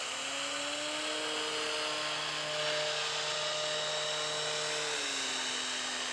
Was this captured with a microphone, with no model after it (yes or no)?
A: yes